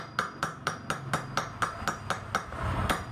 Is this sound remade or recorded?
recorded